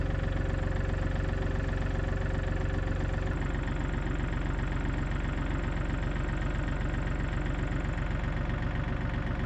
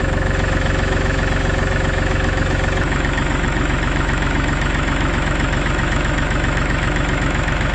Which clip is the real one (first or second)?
first